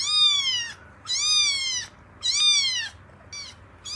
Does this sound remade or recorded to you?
recorded